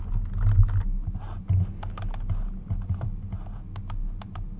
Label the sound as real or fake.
real